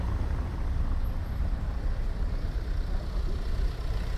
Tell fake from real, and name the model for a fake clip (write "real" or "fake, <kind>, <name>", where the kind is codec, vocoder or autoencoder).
fake, vocoder, BigVGAN v2